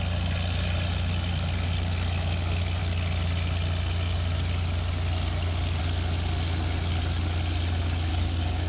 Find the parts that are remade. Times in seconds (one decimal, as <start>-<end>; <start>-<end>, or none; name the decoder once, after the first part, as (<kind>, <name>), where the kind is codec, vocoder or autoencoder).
8.1-8.7 (codec, DAC)